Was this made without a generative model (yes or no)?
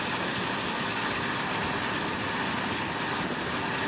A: yes